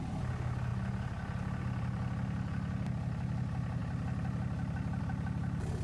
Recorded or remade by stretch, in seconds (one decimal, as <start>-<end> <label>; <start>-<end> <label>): 0.0-5.8 recorded